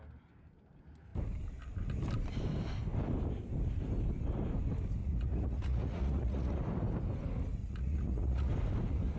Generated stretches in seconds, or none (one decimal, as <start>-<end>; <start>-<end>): 5.0-6.6; 7.6-8.5